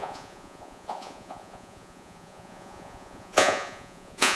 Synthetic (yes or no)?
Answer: yes